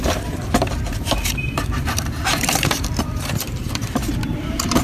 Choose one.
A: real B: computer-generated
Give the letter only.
B